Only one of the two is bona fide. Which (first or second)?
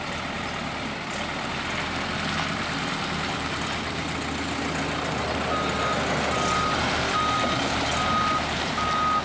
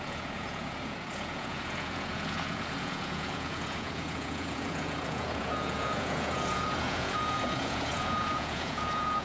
first